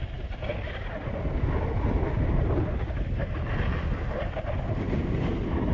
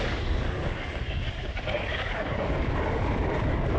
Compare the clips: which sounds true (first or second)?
first